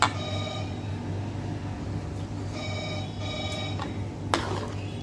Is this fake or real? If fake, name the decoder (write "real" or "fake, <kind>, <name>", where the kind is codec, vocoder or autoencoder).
real